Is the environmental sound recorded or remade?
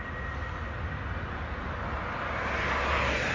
recorded